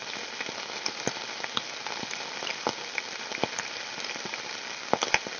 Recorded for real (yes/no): yes